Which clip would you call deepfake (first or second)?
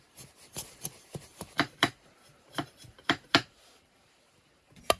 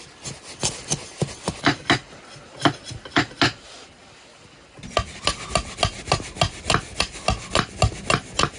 first